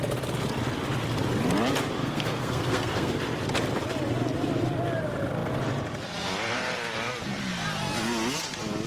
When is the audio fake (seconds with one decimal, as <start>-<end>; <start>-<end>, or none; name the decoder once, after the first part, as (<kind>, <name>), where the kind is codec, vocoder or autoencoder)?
2.0-3.1 (codec, SNAC)

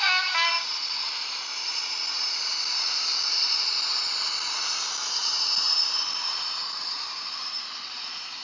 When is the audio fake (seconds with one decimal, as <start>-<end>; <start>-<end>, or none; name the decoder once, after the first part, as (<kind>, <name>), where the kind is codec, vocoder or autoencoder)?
none